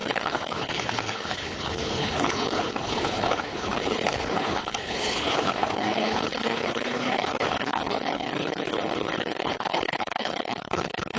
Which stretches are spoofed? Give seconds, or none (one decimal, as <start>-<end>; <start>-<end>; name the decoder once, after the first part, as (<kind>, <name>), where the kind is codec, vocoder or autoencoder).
0.0-11.2 (codec, HILCodec)